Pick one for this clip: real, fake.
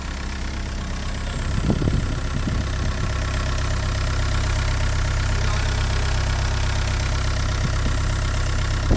real